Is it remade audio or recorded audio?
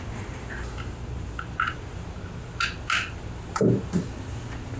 recorded